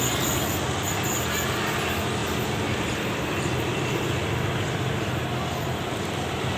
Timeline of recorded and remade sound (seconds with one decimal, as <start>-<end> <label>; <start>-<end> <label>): 0.0-6.6 recorded